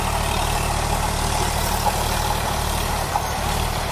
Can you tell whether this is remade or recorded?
remade